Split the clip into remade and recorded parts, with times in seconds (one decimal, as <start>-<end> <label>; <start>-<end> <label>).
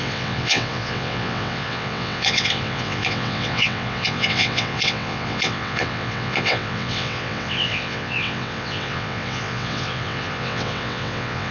0.0-11.5 remade